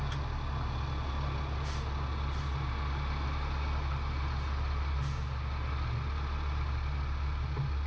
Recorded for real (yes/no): yes